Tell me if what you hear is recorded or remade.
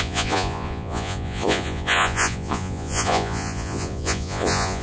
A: remade